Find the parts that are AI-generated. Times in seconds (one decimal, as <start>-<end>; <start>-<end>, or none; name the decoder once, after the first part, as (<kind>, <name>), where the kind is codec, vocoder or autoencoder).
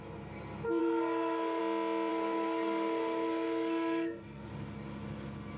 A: 0.8-1.6 (codec, SNAC); 2.1-4.5